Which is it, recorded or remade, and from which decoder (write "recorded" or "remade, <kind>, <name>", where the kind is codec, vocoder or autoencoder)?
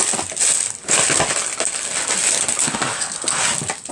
recorded